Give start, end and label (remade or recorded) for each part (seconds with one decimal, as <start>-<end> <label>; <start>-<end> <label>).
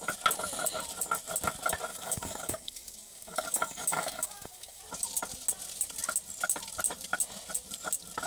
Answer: 0.0-1.9 recorded; 1.9-4.8 remade; 4.8-8.3 recorded